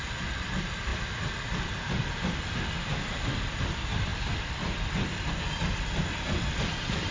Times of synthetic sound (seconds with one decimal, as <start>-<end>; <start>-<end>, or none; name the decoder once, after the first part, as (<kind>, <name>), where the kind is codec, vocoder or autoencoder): 0.0-7.1 (vocoder, BigVGAN v2)